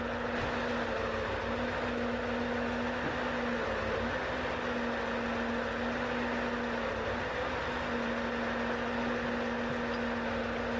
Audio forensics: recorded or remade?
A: recorded